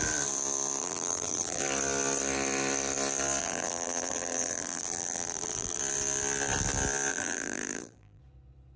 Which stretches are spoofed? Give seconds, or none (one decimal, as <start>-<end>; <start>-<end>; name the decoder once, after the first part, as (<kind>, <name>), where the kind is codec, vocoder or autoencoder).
0.8-1.6 (vocoder, BigVGAN v2); 3.4-5.8; 7.1-8.2